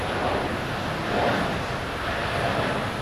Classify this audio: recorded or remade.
recorded